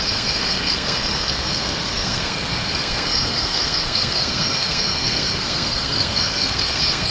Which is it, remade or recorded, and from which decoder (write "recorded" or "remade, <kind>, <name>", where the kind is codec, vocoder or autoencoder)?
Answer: remade, codec, SNAC